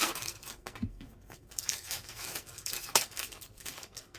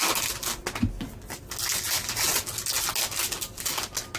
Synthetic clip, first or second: first